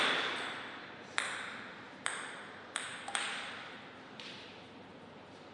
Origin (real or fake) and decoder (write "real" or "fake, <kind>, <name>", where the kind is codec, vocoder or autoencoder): real